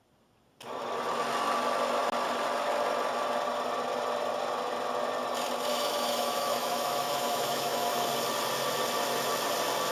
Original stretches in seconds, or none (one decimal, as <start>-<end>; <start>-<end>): 0.0-5.7; 8.1-9.9